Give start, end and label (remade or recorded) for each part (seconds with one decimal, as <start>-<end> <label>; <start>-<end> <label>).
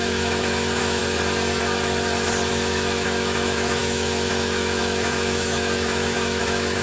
0.0-1.0 remade; 1.0-2.5 recorded; 2.5-6.8 remade